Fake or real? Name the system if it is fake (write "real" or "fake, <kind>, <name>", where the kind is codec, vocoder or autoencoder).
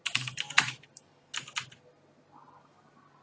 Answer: real